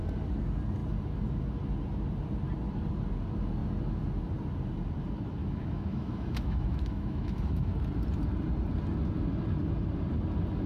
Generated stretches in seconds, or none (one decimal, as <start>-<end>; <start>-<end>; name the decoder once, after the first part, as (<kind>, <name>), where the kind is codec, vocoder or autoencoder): 5.4-7.7 (autoencoder, DAC-VAE)